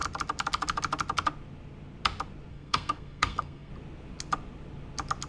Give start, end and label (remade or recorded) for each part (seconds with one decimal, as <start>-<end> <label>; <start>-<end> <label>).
0.0-2.5 recorded; 2.5-3.7 remade; 3.7-5.3 recorded